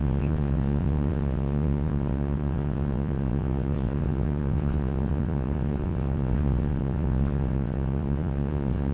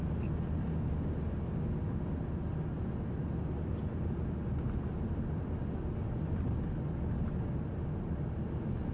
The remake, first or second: first